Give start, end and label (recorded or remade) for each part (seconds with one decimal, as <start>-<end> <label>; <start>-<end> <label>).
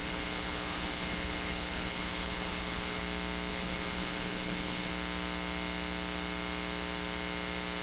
0.0-3.0 remade; 3.0-3.5 recorded; 3.5-4.9 remade; 4.9-7.8 recorded